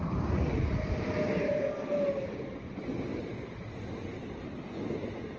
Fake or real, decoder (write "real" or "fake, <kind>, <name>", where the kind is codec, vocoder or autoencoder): real